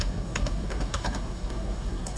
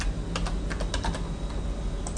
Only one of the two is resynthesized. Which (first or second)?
first